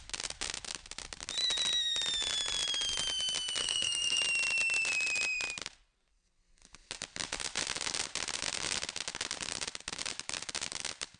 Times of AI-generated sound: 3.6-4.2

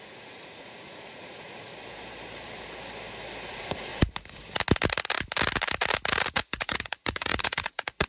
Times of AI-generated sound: 0.0-1.7; 3.5-3.9; 6.3-8.1

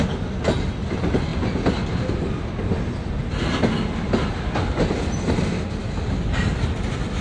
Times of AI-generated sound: none

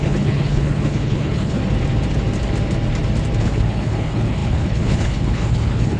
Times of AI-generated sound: 0.0-1.6; 3.4-6.0

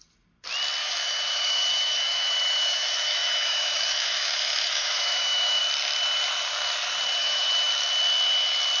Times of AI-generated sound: 0.8-5.6; 7.2-7.7

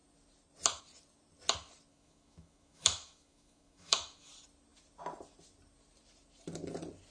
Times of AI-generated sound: 1.9-4.3

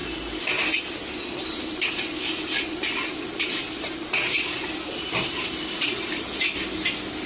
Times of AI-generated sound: none

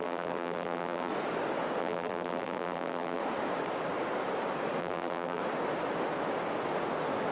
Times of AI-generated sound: 0.0-1.1; 1.8-3.2; 4.8-5.4